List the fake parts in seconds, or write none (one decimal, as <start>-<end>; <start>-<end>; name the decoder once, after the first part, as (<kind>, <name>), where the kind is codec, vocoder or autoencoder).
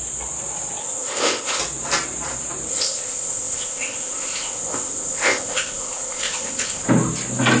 0.8-1.6 (codec, ZipCodec); 2.7-6.9